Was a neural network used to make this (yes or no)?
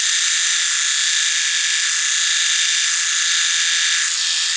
no